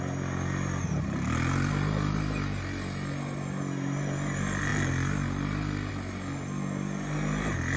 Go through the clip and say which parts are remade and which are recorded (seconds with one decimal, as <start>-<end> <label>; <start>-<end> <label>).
0.0-7.8 recorded